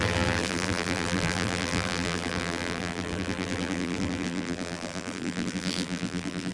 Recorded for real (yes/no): no